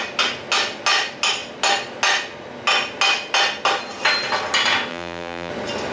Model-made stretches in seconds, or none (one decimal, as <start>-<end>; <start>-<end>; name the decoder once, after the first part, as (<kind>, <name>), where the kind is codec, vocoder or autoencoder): 4.9-5.5 (vocoder, BigVGAN v2)